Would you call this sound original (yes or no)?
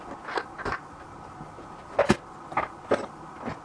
yes